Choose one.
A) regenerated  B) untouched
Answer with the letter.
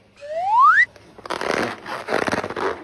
B